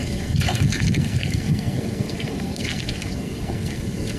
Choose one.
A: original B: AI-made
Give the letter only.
B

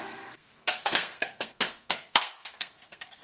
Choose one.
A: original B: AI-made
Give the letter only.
B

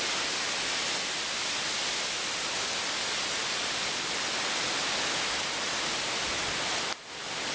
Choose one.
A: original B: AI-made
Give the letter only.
A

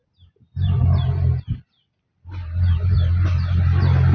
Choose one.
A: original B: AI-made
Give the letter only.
A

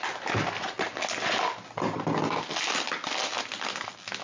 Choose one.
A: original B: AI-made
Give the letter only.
A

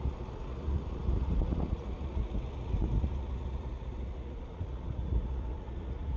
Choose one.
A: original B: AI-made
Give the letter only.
B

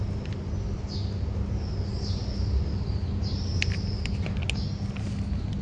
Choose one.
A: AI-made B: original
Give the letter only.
B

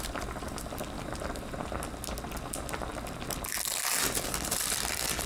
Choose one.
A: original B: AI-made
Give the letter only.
A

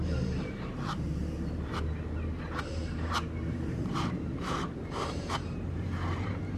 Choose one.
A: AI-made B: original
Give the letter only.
A